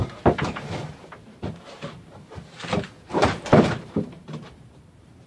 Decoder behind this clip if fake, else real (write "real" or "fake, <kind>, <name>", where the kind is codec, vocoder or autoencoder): fake, vocoder, BigVGAN v2